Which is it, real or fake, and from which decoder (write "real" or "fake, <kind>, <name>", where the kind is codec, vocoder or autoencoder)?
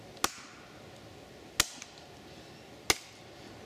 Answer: real